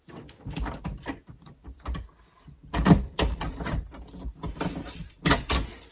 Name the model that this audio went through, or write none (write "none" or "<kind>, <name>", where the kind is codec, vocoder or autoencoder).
none